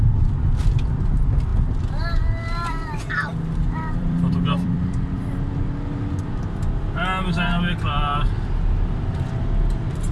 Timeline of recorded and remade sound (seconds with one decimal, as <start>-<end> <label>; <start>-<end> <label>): 0.0-3.3 recorded; 3.3-5.7 remade; 5.7-10.1 recorded